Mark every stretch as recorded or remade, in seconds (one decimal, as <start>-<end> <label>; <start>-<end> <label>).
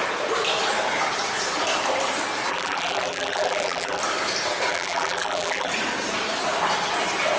0.0-2.5 recorded; 2.5-4.0 remade; 4.0-4.7 recorded; 4.7-5.7 remade; 5.7-7.4 recorded